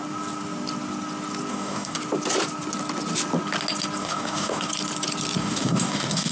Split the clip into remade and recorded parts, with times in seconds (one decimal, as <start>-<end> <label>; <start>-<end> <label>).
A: 0.0-1.5 recorded; 1.5-2.0 remade; 2.0-4.0 recorded; 4.0-4.7 remade; 4.7-5.4 recorded; 5.4-6.3 remade

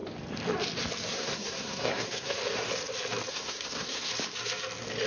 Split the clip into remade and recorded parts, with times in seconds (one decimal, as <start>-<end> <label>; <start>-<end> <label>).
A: 0.0-1.1 recorded; 1.1-2.4 remade; 2.4-3.3 recorded; 3.3-4.1 remade; 4.1-5.1 recorded

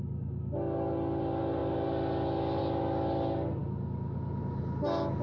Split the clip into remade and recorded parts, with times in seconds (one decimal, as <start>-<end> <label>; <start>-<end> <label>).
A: 0.0-5.2 recorded

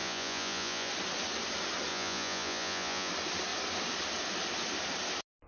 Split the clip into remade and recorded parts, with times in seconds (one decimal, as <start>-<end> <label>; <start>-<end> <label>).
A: 0.0-0.9 remade; 0.9-1.9 recorded; 1.9-3.1 remade; 3.1-5.5 recorded

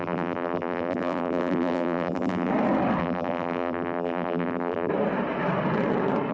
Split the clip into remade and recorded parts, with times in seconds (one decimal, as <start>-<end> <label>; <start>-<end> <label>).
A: 0.0-2.5 remade; 2.5-3.0 recorded; 3.0-4.9 remade; 4.9-6.3 recorded

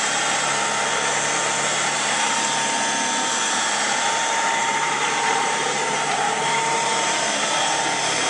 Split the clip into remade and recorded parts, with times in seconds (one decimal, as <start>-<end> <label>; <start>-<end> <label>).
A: 0.0-4.6 recorded; 4.6-7.6 remade; 7.6-8.3 recorded

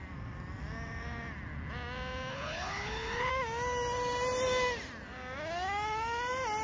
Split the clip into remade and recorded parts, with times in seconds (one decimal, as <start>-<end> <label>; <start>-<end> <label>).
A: 0.0-2.3 recorded; 2.3-3.3 remade; 3.3-6.6 recorded

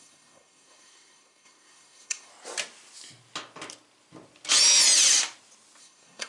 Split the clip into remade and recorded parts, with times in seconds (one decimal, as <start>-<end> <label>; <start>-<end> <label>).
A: 0.0-2.3 remade; 2.3-5.8 recorded; 5.8-6.3 remade